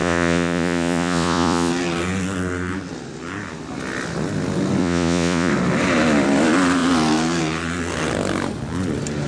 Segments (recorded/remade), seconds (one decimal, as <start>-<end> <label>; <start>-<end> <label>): 0.0-1.7 remade; 1.7-4.8 recorded; 4.8-5.5 remade; 5.5-9.3 recorded